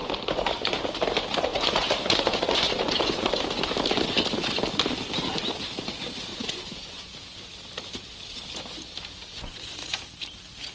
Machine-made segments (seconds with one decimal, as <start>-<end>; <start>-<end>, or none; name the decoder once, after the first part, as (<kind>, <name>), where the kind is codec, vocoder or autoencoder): 0.0-0.8 (vocoder, Vocos); 1.5-3.3; 6.3-7.1; 9.3-10.0